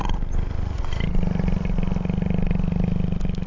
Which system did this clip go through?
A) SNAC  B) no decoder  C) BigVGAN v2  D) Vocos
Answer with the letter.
B